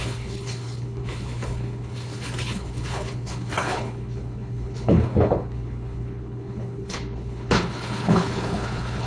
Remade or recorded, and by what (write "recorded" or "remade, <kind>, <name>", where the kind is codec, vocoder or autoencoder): remade, codec, HILCodec